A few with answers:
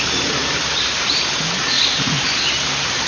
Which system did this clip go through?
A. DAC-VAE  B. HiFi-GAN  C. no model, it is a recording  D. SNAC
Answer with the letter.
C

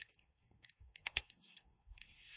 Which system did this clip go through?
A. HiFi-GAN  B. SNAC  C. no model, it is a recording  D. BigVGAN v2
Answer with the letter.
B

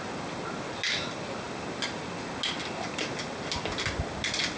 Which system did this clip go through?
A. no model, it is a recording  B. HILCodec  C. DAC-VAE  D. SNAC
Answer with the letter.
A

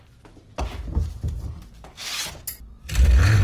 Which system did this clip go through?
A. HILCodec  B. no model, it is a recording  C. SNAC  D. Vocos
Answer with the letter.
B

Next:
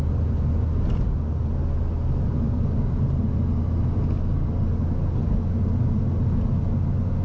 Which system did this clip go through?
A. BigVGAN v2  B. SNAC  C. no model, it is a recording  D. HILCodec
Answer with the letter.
C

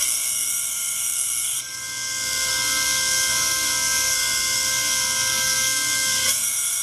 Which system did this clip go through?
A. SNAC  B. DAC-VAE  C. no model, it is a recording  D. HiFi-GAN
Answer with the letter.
A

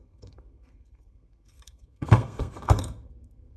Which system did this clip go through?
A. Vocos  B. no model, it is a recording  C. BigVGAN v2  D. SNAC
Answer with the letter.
D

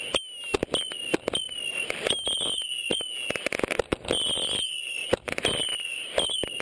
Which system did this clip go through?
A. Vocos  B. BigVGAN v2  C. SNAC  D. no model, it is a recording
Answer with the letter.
D